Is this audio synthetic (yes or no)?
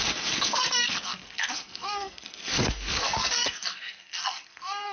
yes